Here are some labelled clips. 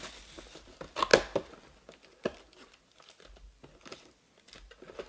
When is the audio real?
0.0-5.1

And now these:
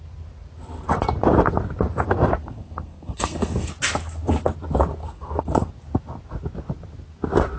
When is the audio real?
0.0-2.4; 3.7-5.0; 5.7-7.6

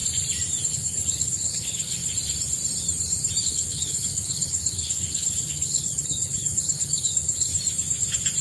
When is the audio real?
0.0-0.7; 2.0-3.4; 7.5-8.4

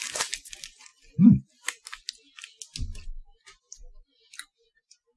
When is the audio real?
0.9-3.6

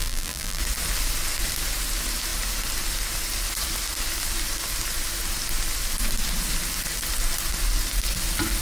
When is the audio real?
0.6-8.6

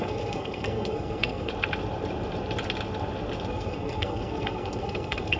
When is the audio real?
1.5-3.5